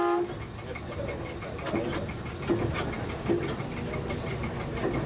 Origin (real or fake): real